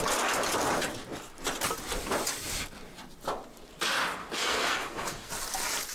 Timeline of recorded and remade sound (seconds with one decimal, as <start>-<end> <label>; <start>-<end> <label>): 0.0-4.2 recorded; 4.2-5.3 remade; 5.3-5.9 recorded